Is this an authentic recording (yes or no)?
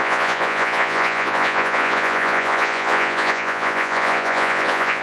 no